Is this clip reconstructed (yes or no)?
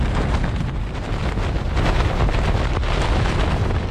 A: no